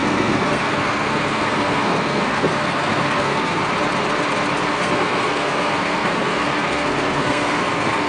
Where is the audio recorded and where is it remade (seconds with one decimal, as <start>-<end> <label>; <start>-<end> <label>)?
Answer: 0.0-3.6 remade; 3.6-4.7 recorded; 4.7-8.1 remade